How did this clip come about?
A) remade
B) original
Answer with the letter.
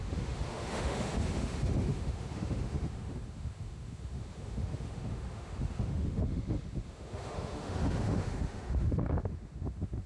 A